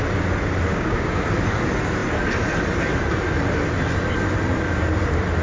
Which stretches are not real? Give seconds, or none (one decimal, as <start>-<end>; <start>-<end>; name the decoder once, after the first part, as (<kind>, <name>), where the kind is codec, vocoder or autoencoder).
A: 0.7-1.3 (codec, DAC)